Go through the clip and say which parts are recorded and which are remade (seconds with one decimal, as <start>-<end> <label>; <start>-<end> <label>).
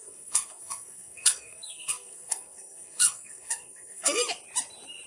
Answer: 0.0-4.2 remade; 4.2-5.1 recorded